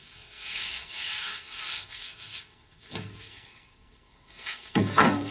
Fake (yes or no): yes